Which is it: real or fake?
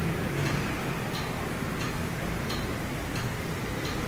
real